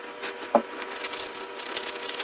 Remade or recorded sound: recorded